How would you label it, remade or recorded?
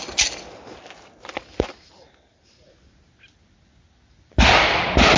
recorded